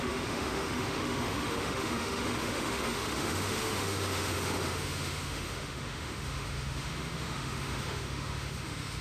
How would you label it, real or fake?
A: fake